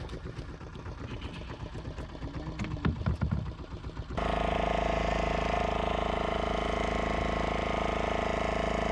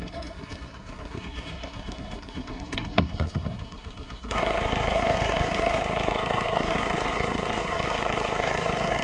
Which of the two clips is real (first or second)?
first